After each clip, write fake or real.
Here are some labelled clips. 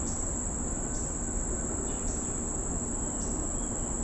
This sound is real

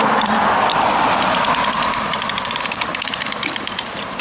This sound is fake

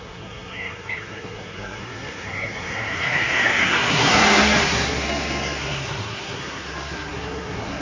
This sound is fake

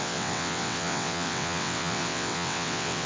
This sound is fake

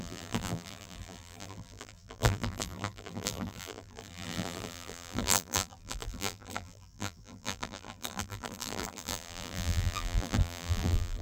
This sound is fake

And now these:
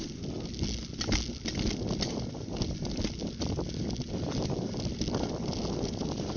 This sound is real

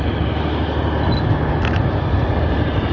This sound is real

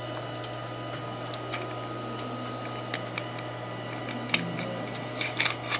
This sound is real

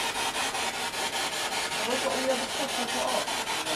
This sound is real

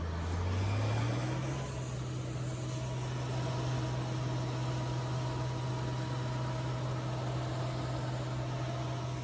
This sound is real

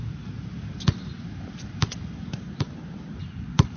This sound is fake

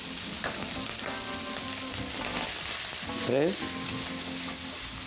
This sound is real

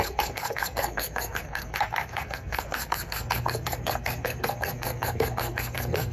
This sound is fake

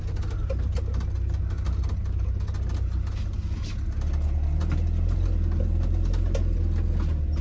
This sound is real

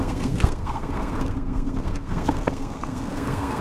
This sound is fake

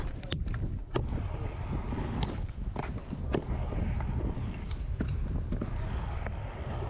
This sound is real